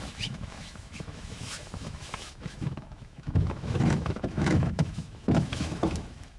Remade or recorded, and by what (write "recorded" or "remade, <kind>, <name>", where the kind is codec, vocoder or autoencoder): remade, autoencoder, DAC-VAE